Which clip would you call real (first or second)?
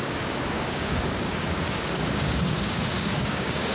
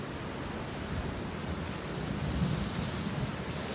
second